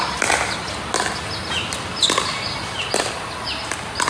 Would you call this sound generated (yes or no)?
no